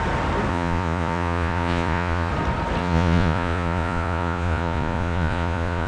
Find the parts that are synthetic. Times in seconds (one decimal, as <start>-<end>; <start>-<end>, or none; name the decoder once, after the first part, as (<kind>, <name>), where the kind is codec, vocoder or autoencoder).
0.5-2.3 (vocoder, Vocos); 2.8-5.9